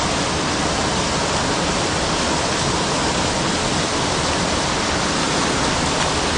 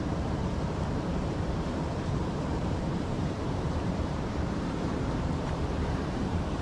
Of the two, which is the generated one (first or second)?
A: second